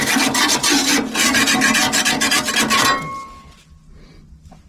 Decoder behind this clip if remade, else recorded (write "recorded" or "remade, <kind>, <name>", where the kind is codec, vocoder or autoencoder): recorded